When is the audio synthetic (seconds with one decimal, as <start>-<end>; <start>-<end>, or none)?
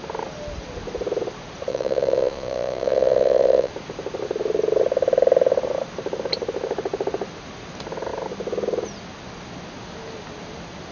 1.7-3.7